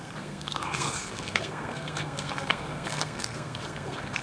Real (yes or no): no